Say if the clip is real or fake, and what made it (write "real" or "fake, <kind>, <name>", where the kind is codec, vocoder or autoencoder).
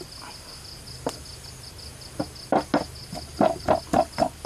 real